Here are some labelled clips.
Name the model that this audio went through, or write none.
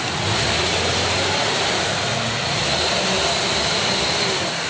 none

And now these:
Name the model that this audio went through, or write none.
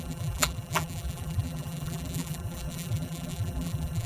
vocoder, BigVGAN v2